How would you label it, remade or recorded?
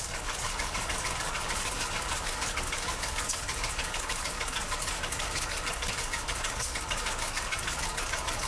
remade